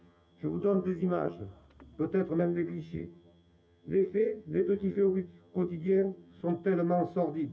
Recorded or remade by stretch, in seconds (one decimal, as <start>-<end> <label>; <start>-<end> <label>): 0.0-1.4 remade; 1.4-2.4 recorded; 2.4-6.4 remade; 6.4-7.5 recorded